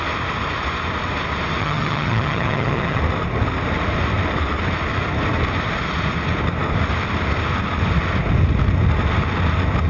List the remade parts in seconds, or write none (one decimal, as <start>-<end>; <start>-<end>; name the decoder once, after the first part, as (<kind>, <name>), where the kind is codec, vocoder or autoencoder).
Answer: 1.6-3.0 (vocoder, HiFi-GAN)